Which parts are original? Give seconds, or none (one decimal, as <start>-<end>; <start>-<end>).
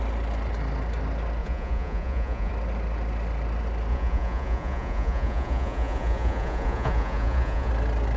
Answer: 0.0-1.4; 2.5-3.9; 7.7-8.2